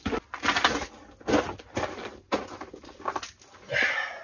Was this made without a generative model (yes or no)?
yes